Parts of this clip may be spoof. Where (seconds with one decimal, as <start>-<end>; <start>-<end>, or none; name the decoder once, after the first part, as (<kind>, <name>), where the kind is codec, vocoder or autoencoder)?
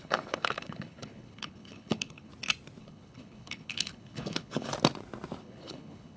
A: 0.0-2.3 (codec, HILCodec); 2.8-4.7; 5.4-6.2